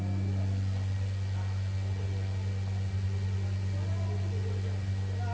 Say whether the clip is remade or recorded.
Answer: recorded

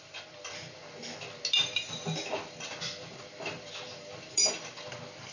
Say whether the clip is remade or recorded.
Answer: recorded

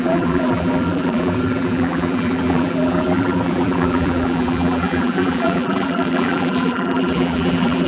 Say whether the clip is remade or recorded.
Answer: remade